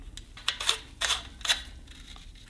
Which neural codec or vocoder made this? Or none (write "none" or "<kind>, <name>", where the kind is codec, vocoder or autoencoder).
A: none